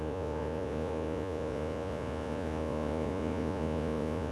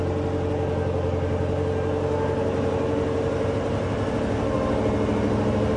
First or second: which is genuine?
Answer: second